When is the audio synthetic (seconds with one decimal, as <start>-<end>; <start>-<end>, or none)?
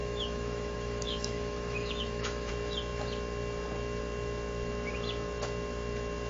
0.0-2.5